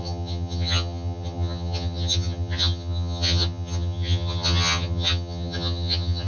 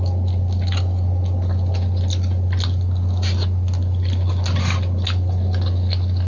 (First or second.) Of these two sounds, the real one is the second